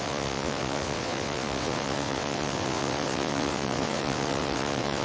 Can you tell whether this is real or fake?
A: fake